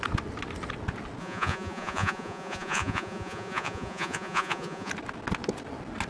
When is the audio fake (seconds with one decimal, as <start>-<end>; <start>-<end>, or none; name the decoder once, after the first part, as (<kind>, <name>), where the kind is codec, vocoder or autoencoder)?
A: 1.2-4.9 (vocoder, Vocos)